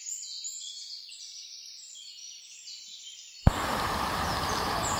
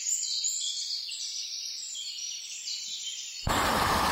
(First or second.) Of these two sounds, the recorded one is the first